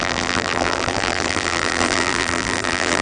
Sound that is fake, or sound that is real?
fake